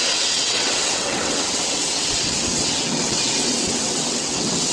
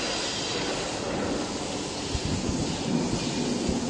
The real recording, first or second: second